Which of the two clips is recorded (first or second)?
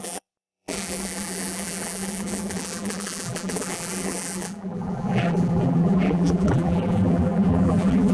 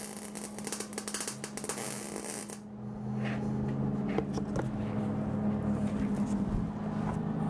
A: second